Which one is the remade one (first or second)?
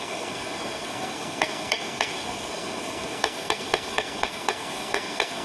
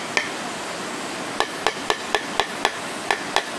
first